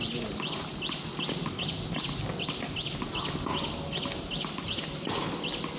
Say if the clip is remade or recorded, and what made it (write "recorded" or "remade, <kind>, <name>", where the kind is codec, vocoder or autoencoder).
recorded